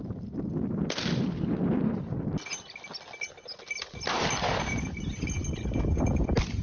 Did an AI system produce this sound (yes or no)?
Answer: no